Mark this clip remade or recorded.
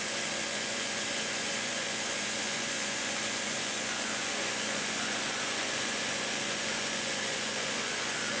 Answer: remade